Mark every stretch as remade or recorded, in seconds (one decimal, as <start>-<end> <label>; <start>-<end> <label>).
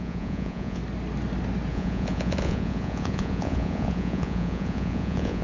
0.0-0.8 remade; 0.8-1.7 recorded; 1.7-5.4 remade